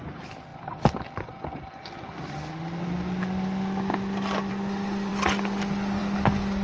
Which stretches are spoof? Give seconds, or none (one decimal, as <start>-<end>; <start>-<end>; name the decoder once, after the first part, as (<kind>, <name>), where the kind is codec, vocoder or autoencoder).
none

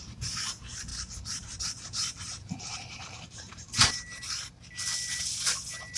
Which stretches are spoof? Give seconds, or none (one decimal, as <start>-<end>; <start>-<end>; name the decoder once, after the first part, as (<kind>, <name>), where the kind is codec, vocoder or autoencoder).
0.9-4.5 (vocoder, BigVGAN v2)

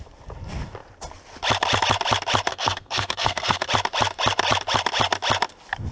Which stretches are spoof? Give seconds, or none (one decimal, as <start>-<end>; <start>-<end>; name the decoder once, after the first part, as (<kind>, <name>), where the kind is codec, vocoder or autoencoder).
2.5-3.7 (codec, SNAC)

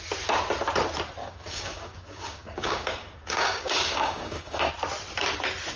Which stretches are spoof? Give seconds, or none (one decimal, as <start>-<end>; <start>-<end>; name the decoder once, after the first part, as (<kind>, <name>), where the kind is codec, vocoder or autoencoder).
1.2-4.7 (codec, DAC)

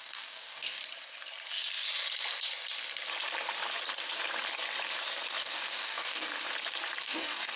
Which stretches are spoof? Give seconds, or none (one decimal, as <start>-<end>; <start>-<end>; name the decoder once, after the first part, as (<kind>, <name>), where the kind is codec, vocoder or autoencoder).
0.0-0.8 (codec, DAC); 5.4-6.3; 7.0-7.6

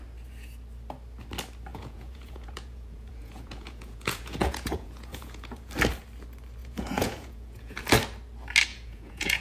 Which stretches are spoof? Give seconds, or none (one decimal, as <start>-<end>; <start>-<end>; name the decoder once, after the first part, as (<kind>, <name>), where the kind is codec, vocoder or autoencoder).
1.7-5.7 (vocoder, Vocos); 6.6-7.8; 8.7-9.4

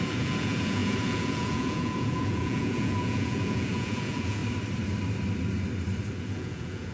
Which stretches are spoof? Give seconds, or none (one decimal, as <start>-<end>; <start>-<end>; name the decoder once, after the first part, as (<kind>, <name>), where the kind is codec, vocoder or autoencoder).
0.0-4.4 (vocoder, Vocos); 6.2-6.9